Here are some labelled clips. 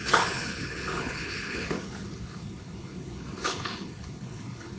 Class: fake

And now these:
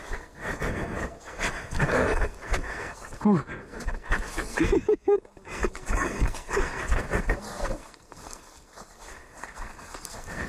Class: fake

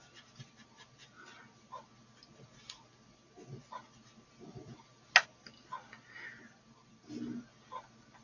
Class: real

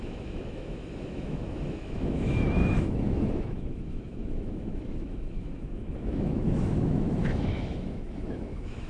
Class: fake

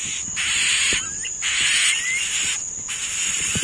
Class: real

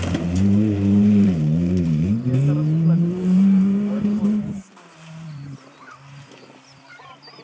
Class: fake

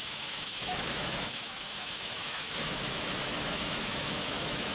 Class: fake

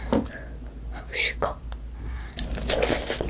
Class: real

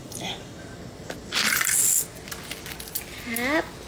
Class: real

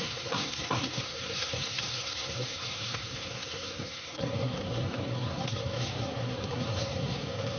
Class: fake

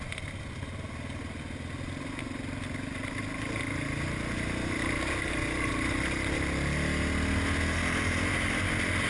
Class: real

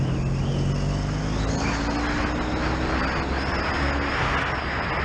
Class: real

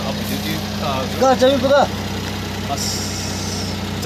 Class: real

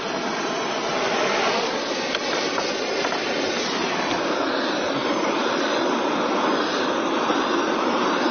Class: real